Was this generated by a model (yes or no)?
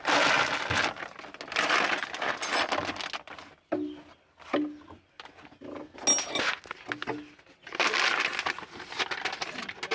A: no